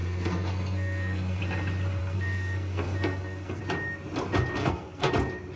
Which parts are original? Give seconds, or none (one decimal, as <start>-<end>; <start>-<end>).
1.4-2.0; 3.6-4.6; 5.1-5.6

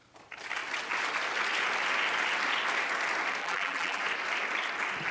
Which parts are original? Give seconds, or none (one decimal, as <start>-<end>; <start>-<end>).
0.0-3.4; 4.0-5.1